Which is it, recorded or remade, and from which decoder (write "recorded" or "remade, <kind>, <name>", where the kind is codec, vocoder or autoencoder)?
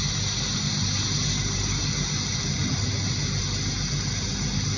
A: recorded